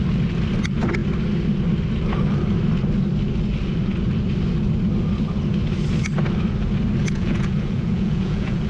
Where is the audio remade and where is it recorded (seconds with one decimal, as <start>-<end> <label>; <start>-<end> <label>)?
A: 0.0-7.0 recorded; 7.0-8.7 remade